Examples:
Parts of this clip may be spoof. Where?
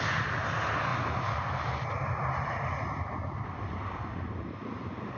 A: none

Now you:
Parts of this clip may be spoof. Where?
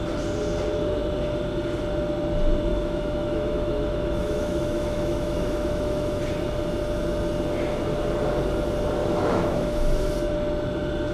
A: 2.7-6.2; 9.0-10.1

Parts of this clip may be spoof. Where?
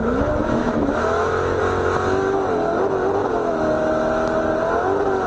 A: 0.0-1.6; 3.2-3.9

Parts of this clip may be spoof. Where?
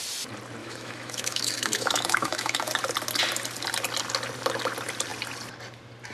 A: 0.6-2.7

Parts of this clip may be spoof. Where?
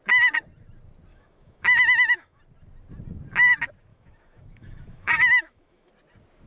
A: 1.1-2.4; 3.9-5.9